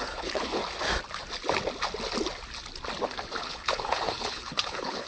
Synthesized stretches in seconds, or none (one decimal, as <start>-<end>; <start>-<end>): 0.0-0.6; 3.4-5.1